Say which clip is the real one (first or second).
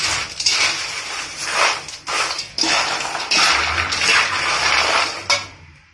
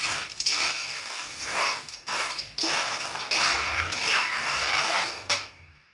first